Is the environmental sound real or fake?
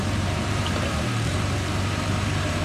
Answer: fake